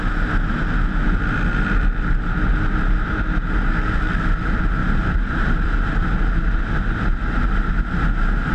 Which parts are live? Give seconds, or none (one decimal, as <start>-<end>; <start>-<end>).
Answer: 0.0-4.8; 5.5-8.5